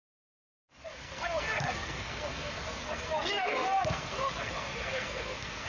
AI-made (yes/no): yes